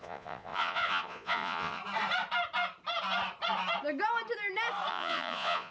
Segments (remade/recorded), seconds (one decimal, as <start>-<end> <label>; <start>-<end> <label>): 0.0-1.8 remade; 1.8-4.9 recorded; 4.9-5.7 remade